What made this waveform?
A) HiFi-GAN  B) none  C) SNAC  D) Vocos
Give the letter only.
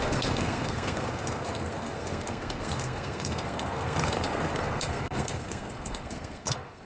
C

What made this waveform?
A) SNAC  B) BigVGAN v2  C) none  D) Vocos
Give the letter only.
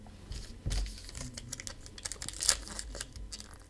C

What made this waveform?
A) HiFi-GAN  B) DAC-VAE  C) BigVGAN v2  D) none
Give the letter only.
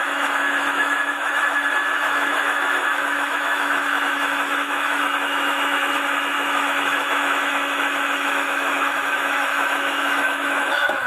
B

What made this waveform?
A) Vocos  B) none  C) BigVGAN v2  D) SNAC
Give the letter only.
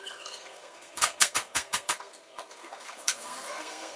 D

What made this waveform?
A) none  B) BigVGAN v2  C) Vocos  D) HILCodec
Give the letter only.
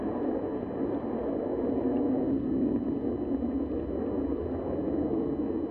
A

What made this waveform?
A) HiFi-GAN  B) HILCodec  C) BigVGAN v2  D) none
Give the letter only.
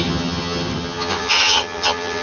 A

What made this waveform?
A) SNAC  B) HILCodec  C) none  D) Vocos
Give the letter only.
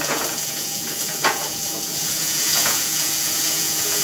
D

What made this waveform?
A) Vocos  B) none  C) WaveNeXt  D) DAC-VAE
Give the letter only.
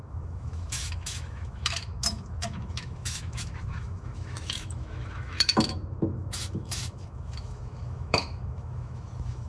D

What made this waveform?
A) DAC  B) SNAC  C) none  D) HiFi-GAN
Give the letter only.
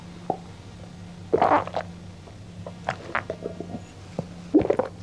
C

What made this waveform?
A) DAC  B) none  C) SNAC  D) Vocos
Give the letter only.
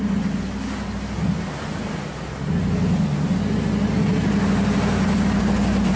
B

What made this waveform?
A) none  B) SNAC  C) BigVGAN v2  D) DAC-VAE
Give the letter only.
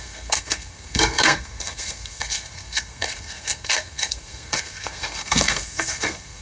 B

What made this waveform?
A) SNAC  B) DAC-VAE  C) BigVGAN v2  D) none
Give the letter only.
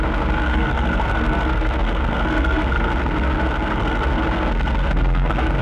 A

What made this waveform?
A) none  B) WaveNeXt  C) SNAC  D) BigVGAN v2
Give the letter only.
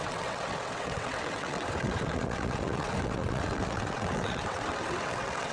B